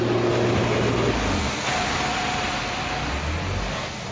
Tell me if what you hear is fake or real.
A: real